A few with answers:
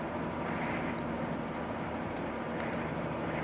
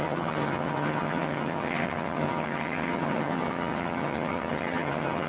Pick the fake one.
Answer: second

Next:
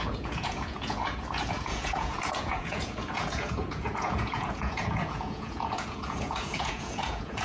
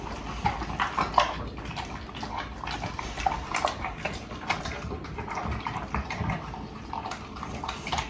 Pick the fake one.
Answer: first